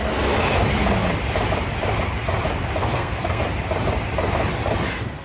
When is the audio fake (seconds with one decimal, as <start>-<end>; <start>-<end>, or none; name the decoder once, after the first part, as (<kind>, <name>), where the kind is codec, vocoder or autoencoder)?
2.8-3.4 (codec, SNAC)